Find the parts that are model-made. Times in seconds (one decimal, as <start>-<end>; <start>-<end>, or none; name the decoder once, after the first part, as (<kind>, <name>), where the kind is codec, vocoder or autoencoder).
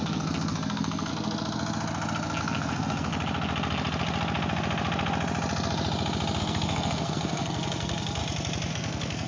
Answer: 0.0-1.1 (codec, SNAC); 2.4-3.1; 6.4-8.2; 8.7-9.3